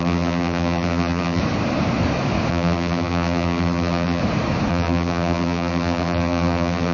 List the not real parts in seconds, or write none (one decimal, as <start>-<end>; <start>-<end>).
0.0-1.4; 2.5-4.2; 4.7-6.9